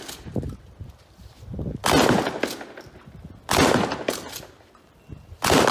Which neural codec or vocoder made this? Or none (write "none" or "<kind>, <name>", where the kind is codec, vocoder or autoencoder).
none